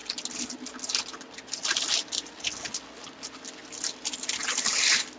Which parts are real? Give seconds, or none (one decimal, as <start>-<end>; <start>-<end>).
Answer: 0.0-5.2